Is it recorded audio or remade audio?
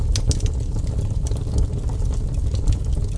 recorded